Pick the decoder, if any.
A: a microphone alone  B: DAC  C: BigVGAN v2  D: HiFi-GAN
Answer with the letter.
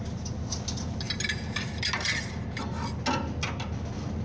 A